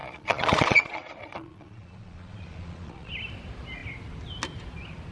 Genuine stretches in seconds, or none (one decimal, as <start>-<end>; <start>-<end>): 3.1-5.1